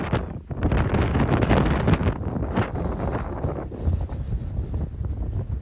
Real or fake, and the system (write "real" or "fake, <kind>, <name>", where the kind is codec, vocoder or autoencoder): real